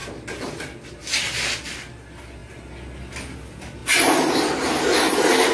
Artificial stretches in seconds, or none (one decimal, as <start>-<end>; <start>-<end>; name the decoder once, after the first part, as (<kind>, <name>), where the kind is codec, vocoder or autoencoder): none